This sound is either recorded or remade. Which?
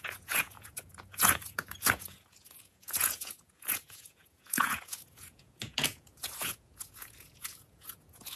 remade